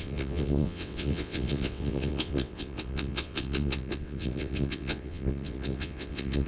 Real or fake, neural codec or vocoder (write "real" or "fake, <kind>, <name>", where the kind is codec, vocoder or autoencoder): fake, vocoder, WaveNeXt